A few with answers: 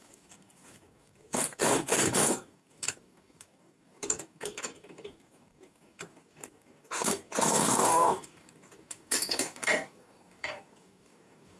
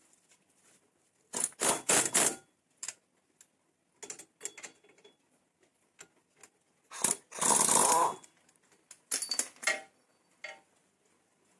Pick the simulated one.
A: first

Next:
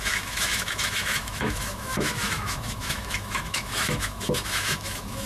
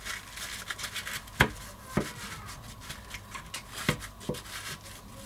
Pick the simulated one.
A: first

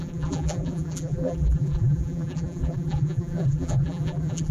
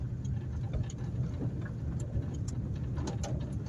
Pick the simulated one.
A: first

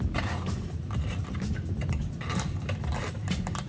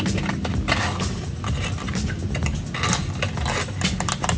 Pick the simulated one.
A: first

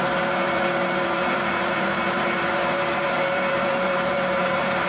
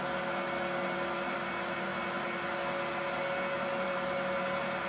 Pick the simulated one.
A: first